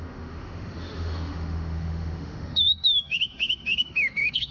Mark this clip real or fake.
fake